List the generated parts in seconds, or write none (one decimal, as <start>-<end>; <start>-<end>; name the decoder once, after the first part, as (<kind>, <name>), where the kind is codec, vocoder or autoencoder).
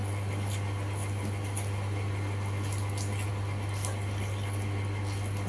none